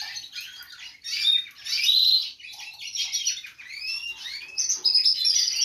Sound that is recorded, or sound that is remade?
recorded